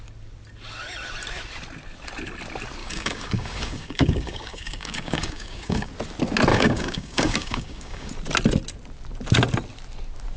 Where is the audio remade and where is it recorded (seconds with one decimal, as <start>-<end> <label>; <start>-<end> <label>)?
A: 0.0-2.8 recorded; 2.8-5.9 remade; 5.9-6.5 recorded; 6.5-8.1 remade; 8.1-10.4 recorded